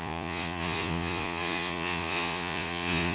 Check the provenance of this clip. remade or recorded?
remade